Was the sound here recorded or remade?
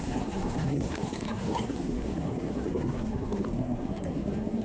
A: remade